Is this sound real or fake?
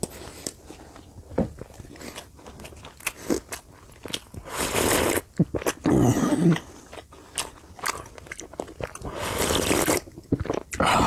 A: real